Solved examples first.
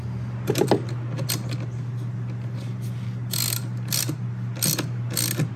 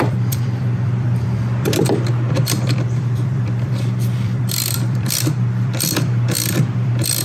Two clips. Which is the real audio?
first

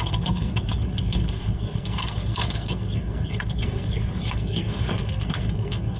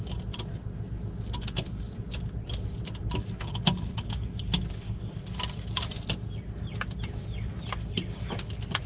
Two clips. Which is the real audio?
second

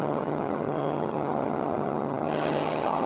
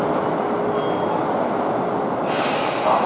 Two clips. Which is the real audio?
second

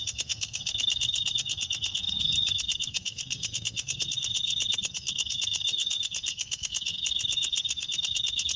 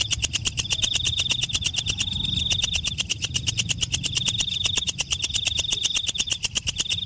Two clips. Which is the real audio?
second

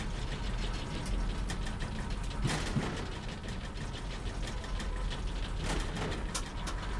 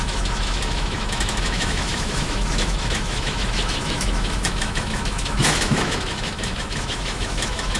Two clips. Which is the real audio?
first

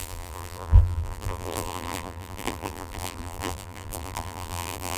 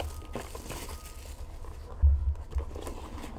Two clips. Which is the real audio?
second